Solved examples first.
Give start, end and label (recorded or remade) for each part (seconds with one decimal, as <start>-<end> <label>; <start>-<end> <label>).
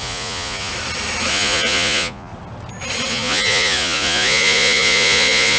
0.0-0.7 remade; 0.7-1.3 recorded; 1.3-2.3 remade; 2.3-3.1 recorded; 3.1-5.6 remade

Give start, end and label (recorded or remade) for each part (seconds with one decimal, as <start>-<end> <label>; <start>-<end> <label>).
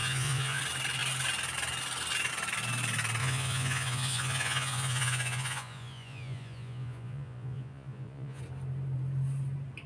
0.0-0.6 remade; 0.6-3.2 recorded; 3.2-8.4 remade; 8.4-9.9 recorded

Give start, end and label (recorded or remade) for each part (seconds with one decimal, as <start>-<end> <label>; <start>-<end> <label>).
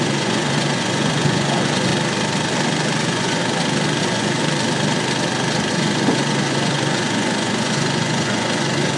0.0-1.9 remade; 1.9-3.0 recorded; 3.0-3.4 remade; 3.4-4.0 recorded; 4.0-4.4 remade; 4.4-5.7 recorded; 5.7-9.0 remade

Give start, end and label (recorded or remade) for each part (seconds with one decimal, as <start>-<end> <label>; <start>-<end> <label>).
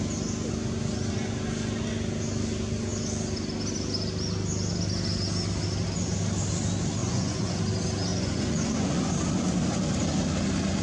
0.0-7.0 recorded; 7.0-7.6 remade; 7.6-8.1 recorded; 8.1-9.1 remade; 9.1-10.8 recorded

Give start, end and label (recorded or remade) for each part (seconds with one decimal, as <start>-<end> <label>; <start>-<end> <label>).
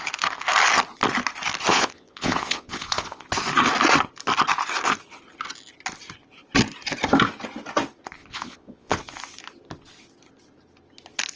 0.0-1.7 recorded; 1.7-3.3 remade; 3.3-8.2 recorded; 8.2-9.0 remade; 9.0-11.4 recorded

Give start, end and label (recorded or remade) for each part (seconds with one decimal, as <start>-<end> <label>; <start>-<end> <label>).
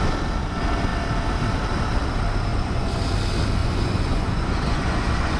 0.0-2.5 recorded; 2.5-3.0 remade; 3.0-3.6 recorded; 3.6-5.4 remade